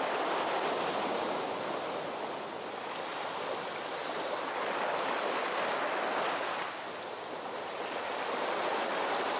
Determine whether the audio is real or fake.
real